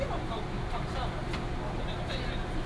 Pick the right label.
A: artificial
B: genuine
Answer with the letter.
B